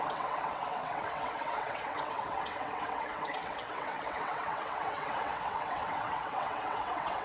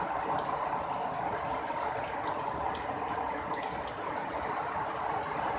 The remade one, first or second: first